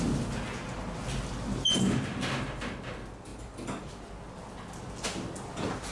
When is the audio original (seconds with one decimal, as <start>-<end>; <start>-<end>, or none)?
0.0-3.3; 3.9-5.9